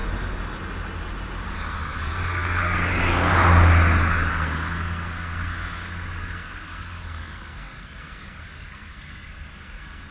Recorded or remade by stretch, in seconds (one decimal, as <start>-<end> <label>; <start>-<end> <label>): 0.0-1.5 recorded; 1.5-3.3 remade; 3.3-4.3 recorded; 4.3-10.1 remade